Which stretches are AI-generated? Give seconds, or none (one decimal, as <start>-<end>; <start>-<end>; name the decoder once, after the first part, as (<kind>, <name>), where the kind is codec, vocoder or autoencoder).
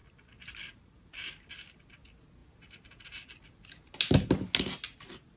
none